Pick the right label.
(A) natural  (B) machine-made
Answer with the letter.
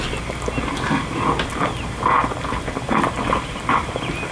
A